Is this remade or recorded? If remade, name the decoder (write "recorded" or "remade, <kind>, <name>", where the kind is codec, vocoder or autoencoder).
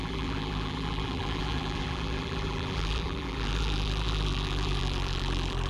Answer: remade, vocoder, BigVGAN v2